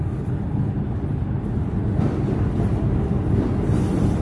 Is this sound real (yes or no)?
yes